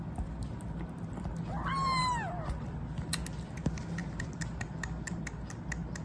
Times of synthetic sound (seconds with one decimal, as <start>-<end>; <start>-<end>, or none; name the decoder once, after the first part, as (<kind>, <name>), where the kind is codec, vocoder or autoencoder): none